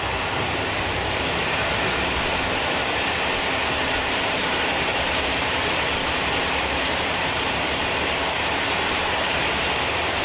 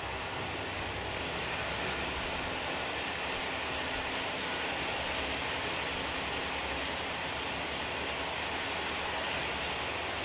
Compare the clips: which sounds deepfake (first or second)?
first